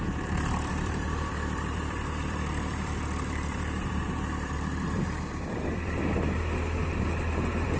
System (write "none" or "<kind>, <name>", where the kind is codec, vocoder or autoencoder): vocoder, BigVGAN v2